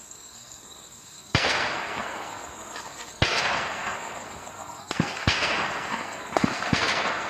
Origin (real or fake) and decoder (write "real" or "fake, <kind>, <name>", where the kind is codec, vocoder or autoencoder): fake, codec, SNAC